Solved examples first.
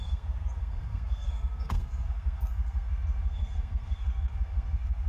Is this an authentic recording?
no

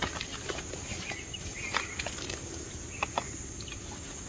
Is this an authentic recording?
yes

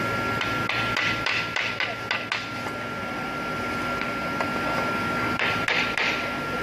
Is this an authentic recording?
yes